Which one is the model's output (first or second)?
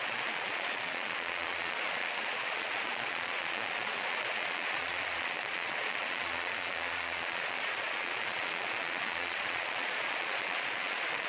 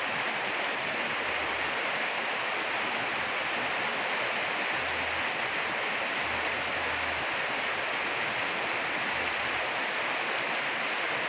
first